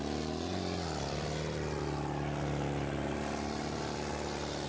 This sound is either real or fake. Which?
real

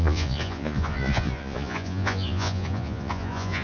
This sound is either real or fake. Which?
fake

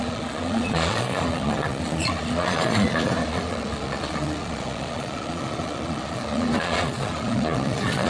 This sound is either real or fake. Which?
fake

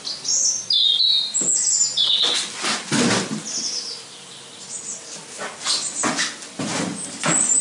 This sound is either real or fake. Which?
real